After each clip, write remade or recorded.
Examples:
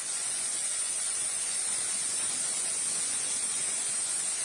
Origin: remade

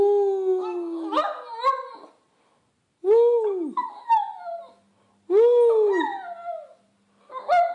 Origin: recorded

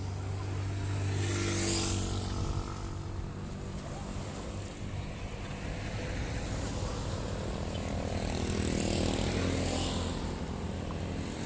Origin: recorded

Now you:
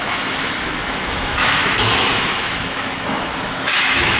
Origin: remade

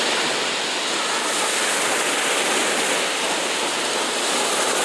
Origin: recorded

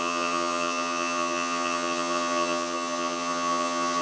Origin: remade